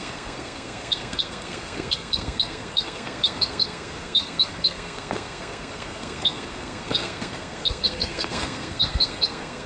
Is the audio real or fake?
fake